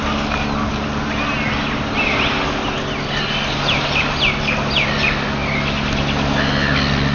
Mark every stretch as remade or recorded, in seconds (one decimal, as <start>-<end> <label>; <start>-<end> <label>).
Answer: 0.0-7.1 recorded